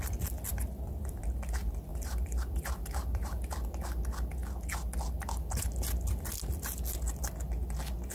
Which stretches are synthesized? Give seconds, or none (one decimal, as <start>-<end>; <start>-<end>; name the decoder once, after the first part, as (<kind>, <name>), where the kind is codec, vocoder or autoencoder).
0.5-1.2 (vocoder, BigVGAN v2); 1.9-3.5